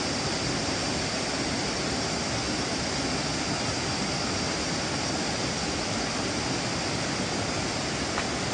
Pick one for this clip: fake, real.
real